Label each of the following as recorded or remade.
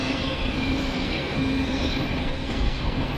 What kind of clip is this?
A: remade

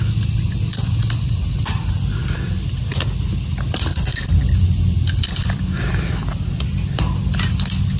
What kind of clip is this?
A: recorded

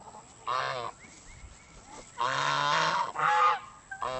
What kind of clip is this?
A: recorded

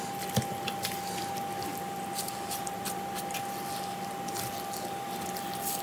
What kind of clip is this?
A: recorded